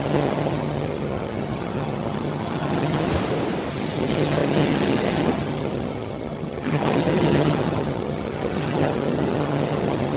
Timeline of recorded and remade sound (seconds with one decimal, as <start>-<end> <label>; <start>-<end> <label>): 0.0-3.1 remade; 3.1-3.7 recorded; 3.7-10.2 remade